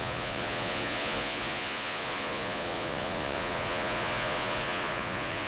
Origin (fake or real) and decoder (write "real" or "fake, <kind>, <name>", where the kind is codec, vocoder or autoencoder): fake, vocoder, Vocos